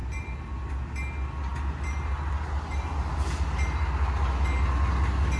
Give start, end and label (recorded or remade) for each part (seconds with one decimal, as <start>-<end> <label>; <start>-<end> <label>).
0.0-0.7 remade; 0.7-5.4 recorded